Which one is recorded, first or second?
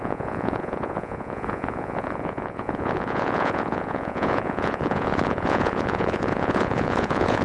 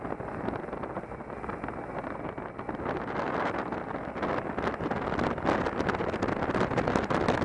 second